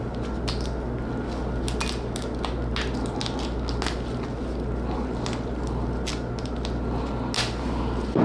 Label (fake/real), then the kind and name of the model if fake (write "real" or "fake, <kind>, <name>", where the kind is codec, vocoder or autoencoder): real